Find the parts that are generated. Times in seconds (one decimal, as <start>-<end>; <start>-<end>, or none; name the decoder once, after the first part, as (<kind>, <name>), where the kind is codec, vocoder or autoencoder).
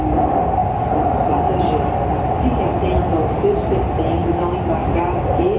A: none